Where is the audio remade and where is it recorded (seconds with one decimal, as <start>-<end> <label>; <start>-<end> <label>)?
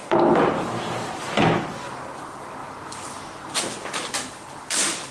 0.0-5.1 recorded